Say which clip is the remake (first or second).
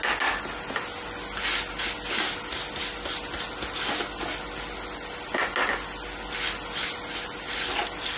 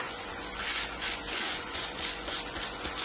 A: second